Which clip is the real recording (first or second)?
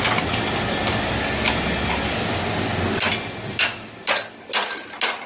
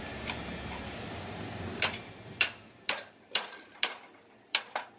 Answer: first